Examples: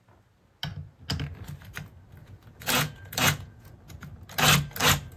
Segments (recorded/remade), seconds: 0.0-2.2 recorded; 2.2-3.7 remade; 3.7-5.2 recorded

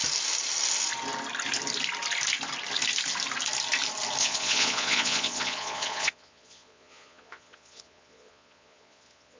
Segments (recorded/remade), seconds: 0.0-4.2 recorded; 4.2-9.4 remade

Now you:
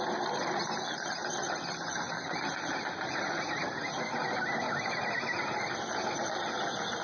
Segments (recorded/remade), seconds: 0.0-7.0 recorded